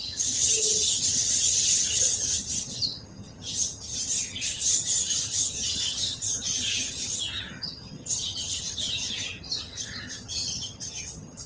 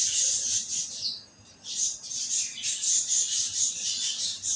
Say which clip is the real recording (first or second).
second